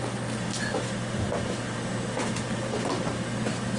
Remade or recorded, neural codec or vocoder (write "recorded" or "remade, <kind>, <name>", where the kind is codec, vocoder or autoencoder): recorded